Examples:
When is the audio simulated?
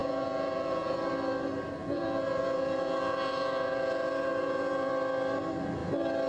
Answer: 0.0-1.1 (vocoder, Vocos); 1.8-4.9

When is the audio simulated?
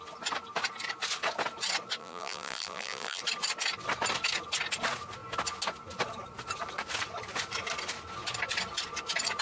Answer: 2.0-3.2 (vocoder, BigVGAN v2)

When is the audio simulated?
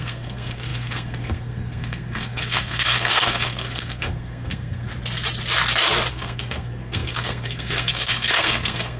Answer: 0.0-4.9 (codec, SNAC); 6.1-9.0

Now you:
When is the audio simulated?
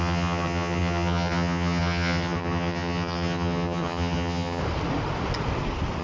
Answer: 0.0-4.6 (vocoder, HiFi-GAN)